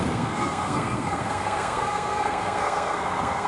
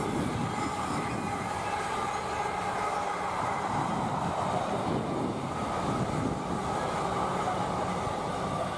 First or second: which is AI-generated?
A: first